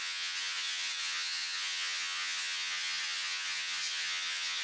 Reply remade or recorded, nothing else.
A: remade